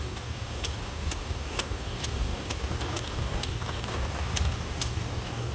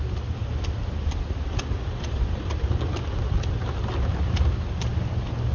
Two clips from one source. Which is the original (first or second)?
second